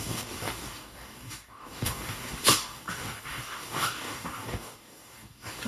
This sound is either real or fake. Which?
fake